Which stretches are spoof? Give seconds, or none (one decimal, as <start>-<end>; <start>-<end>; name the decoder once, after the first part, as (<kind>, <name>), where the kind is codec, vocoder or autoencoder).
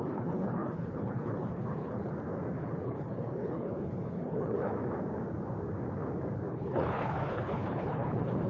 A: 0.0-2.1 (codec, HILCodec); 2.6-4.7; 6.5-8.5